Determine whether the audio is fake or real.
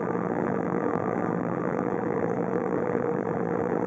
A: fake